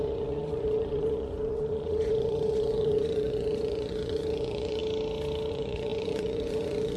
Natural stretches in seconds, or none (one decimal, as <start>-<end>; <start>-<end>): 4.8-5.5